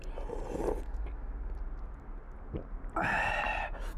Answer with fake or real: real